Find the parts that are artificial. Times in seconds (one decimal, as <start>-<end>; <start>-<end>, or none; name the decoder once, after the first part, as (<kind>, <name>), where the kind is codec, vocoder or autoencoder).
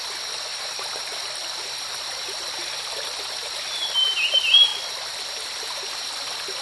none